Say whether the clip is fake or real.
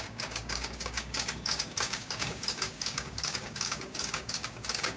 fake